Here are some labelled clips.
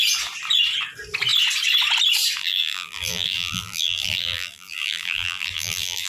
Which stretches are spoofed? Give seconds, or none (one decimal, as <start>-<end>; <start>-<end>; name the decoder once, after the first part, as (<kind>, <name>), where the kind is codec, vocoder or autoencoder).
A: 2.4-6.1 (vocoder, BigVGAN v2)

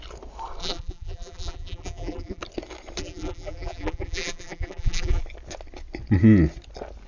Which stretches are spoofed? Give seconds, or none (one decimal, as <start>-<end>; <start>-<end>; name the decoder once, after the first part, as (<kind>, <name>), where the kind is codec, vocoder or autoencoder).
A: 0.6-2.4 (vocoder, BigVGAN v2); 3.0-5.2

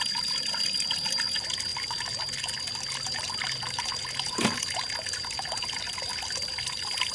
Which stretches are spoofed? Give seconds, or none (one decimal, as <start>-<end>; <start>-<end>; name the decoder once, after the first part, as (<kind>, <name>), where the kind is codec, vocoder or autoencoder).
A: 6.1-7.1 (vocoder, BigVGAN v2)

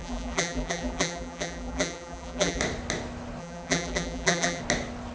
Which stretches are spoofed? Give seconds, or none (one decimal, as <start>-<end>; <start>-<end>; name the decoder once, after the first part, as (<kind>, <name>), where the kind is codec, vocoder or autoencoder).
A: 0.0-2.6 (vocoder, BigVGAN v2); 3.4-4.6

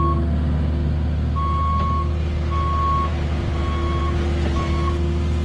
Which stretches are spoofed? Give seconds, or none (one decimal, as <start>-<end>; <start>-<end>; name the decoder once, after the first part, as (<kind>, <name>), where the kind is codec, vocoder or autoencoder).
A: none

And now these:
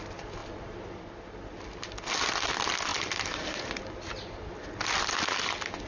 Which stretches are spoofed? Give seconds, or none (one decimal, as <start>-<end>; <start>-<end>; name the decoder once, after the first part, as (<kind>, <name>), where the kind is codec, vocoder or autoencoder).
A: 2.9-3.8 (vocoder, BigVGAN v2)